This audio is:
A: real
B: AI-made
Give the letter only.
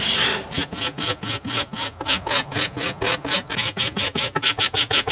A